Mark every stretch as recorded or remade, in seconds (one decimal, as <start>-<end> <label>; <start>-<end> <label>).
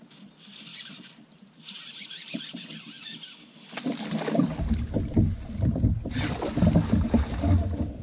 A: 0.0-0.7 recorded; 0.7-2.6 remade; 2.6-8.0 recorded